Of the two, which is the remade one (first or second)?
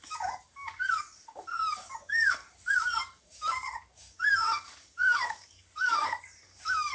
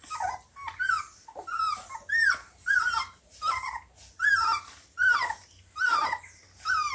first